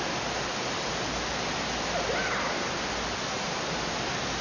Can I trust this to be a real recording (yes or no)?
yes